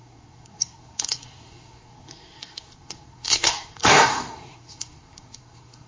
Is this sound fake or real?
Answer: fake